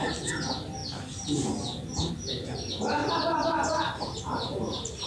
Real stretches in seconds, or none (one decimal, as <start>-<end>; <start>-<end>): 0.0-5.1